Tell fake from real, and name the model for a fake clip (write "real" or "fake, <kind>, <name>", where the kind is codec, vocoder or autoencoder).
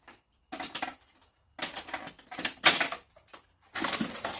real